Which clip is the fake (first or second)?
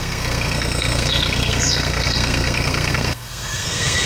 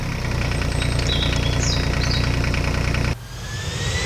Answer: first